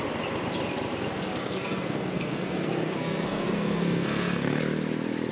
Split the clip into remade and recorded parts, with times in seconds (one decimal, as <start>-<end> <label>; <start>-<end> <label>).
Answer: 0.0-1.4 recorded; 1.4-4.6 remade; 4.6-5.3 recorded